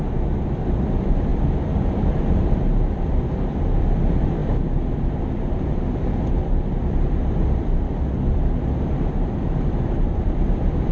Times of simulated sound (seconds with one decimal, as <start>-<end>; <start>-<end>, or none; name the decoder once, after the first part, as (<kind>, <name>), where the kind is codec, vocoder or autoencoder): 0.0-4.4 (vocoder, BigVGAN v2); 5.2-10.9